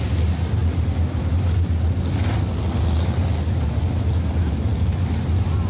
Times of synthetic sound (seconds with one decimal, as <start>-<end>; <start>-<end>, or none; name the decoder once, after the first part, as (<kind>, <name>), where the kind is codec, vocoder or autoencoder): none